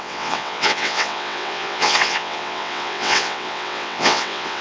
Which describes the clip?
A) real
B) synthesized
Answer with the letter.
B